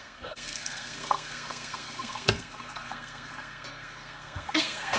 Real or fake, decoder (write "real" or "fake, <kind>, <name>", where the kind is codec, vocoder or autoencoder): fake, codec, SNAC